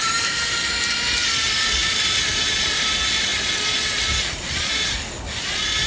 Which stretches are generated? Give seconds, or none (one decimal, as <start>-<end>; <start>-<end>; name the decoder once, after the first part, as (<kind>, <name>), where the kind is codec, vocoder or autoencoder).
1.8-2.5 (vocoder, BigVGAN v2)